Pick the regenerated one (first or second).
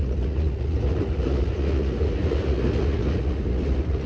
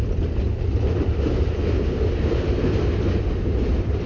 first